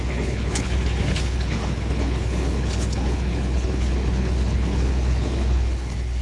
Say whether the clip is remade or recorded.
remade